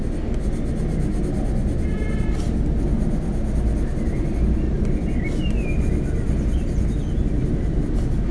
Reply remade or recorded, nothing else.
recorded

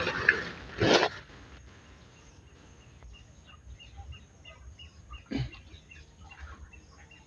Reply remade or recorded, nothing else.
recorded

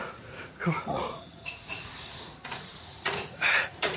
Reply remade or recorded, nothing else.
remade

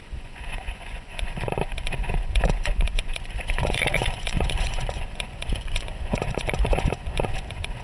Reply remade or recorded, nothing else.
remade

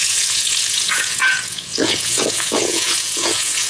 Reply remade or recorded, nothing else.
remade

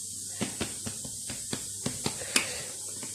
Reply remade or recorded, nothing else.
recorded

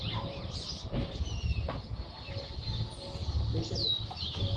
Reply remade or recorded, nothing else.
recorded